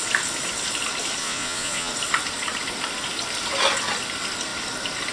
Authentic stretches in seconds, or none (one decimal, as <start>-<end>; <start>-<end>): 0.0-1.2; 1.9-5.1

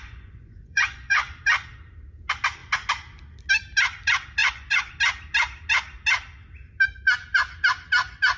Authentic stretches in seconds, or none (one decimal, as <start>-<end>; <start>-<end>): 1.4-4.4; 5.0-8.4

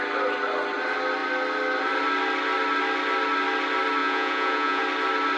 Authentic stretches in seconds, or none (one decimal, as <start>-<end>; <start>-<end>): 0.0-4.0; 4.8-5.4

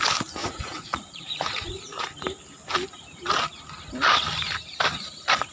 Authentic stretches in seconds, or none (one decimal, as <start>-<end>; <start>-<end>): 0.0-0.4; 1.8-5.5